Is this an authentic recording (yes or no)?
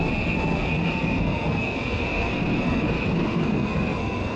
no